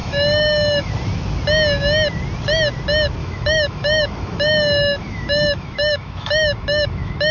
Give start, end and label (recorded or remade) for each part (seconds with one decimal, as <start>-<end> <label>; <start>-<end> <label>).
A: 0.0-0.9 remade; 0.9-3.2 recorded; 3.2-7.3 remade